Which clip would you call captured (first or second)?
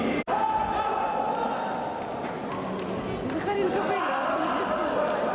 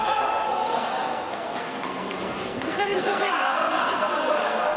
first